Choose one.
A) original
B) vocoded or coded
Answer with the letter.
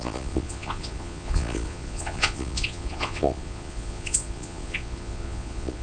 B